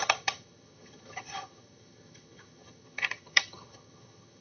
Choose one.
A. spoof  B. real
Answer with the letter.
A